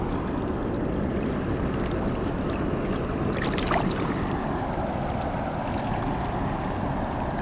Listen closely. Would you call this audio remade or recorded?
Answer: recorded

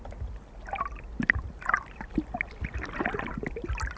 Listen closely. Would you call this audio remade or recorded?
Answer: recorded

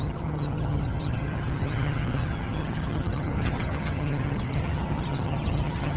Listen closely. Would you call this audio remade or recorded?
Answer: remade